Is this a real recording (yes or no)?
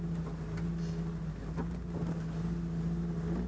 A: yes